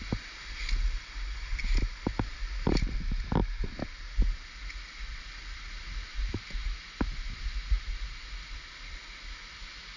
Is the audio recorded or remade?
recorded